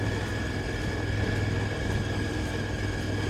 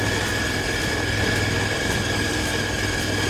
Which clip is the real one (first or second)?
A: first